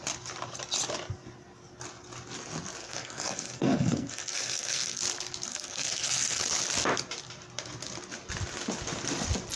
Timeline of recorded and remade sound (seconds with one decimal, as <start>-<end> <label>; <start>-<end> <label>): 0.0-2.8 recorded; 2.8-5.0 remade; 5.0-5.5 recorded; 5.5-6.4 remade; 6.4-9.6 recorded